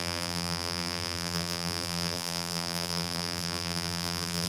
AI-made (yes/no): yes